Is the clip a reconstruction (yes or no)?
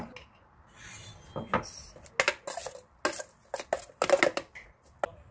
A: no